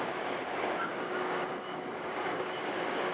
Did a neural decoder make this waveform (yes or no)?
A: yes